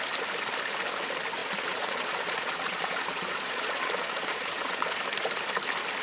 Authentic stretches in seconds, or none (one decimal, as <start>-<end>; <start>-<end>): 0.0-1.4; 5.0-6.0